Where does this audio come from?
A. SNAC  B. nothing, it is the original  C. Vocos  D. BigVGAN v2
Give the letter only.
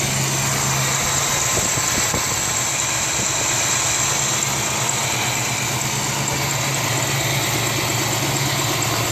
B